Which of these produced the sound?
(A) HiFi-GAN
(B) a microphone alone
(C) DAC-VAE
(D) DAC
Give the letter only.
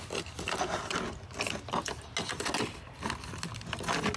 B